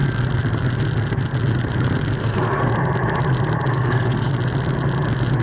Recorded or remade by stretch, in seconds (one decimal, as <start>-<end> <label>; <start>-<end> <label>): 0.0-2.2 recorded; 2.2-2.7 remade; 2.7-3.7 recorded; 3.7-4.3 remade; 4.3-5.4 recorded